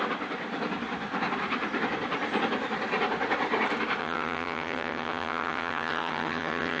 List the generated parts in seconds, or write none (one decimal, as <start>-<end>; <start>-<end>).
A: 4.0-6.8